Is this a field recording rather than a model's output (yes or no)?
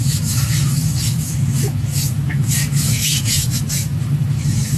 no